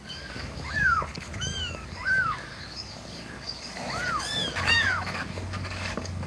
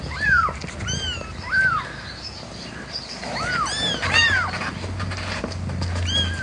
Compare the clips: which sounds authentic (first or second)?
second